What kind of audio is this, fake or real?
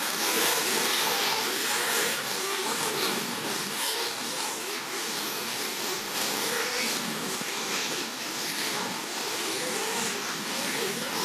fake